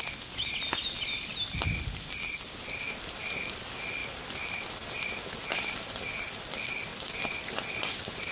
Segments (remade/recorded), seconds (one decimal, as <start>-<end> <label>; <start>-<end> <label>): 0.0-8.3 recorded